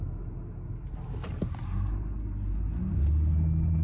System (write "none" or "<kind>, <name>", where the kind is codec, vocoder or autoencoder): none